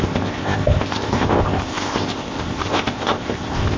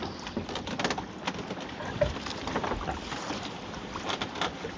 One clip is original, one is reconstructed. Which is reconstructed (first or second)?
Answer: first